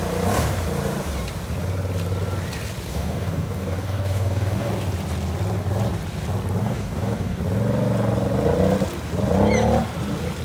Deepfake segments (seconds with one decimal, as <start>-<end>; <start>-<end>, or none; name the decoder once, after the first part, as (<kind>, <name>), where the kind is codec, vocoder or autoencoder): 2.9-4.7 (codec, DAC); 6.6-7.4